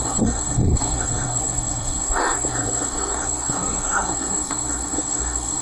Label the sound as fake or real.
fake